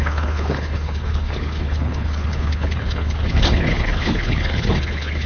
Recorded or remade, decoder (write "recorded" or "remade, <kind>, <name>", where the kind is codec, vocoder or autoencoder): remade, codec, HILCodec